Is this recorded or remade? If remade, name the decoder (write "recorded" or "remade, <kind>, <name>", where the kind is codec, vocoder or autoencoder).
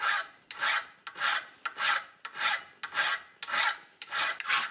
recorded